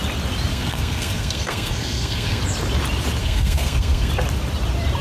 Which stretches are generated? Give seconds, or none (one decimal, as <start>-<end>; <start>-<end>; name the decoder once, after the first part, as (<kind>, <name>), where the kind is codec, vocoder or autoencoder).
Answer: 0.5-2.4 (codec, SNAC); 3.2-4.1